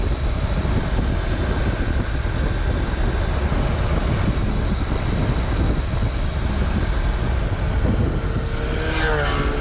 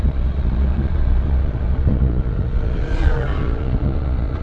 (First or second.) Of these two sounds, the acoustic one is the first